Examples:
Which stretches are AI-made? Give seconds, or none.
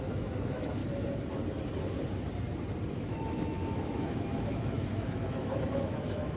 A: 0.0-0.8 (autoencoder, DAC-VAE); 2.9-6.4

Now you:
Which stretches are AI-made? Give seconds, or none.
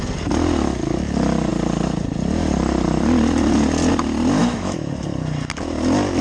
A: 4.4-4.9 (autoencoder, DAC-VAE)